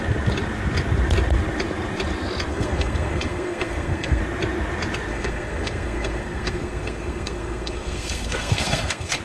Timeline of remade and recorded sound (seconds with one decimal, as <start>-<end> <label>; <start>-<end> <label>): 0.0-2.5 recorded; 2.5-4.2 remade; 4.2-5.1 recorded; 5.1-9.2 remade